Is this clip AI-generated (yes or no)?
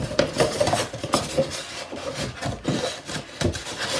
no